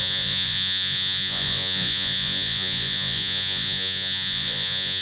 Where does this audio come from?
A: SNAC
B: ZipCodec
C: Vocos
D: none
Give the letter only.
C